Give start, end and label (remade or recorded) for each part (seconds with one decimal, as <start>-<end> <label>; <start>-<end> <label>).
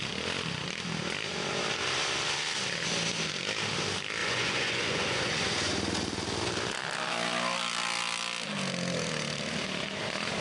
0.0-4.2 recorded; 4.2-5.7 remade; 5.7-10.4 recorded